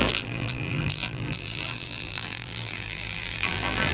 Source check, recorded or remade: remade